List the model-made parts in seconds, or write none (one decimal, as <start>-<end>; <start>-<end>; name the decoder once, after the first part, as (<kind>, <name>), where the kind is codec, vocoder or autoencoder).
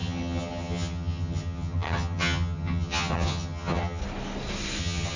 0.0-4.0 (vocoder, HiFi-GAN); 4.8-5.2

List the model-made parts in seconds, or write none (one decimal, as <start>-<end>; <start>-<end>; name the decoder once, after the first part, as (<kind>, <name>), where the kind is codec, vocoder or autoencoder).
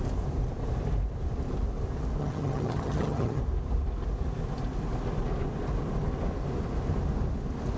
2.2-3.4 (vocoder, HiFi-GAN)